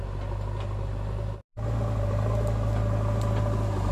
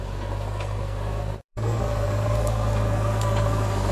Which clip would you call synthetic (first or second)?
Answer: second